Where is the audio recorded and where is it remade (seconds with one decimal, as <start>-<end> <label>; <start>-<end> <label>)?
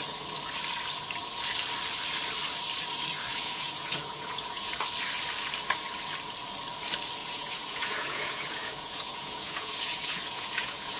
0.0-3.3 recorded; 3.3-4.7 remade; 4.7-7.2 recorded; 7.2-11.0 remade